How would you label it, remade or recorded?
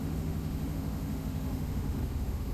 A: remade